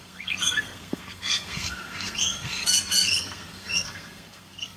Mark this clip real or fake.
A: fake